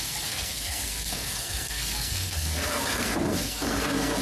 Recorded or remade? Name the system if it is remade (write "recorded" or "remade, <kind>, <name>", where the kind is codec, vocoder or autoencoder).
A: remade, codec, SNAC